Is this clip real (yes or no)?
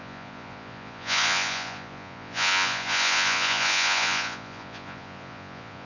no